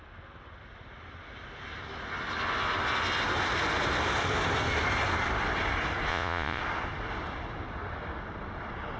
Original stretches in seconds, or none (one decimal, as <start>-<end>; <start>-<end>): 0.0-6.1; 6.6-9.0